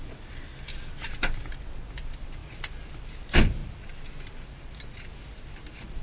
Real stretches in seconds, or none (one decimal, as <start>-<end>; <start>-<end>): 0.0-6.0